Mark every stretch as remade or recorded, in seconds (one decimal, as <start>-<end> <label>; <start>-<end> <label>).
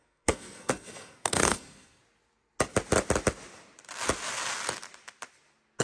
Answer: 0.0-2.0 remade; 2.0-5.8 recorded